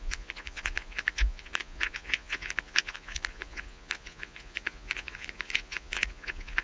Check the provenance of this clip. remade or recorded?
remade